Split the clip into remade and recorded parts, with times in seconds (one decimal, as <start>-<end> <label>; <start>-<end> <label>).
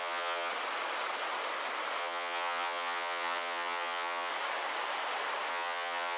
0.0-0.5 remade; 0.5-2.0 recorded; 2.0-4.3 remade; 4.3-5.5 recorded; 5.5-6.2 remade